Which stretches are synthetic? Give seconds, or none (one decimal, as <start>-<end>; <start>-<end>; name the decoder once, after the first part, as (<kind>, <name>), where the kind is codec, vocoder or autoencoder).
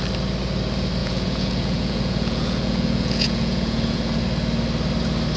1.0-4.2 (vocoder, Vocos)